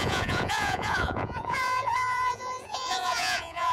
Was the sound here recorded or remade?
remade